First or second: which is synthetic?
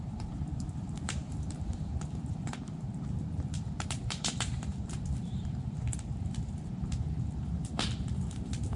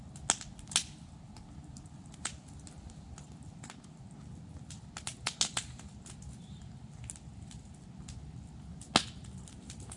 first